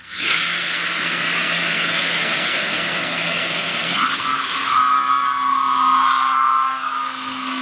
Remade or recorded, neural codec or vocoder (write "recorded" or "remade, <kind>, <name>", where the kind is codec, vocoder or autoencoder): remade, codec, SNAC